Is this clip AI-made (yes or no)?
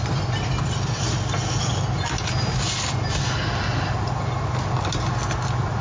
no